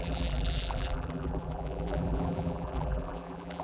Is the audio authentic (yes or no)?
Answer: no